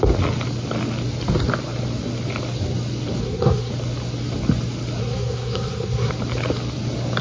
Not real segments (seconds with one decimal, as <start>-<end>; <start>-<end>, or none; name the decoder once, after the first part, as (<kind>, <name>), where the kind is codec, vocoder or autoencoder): 3.2-3.7 (codec, SNAC); 5.0-6.1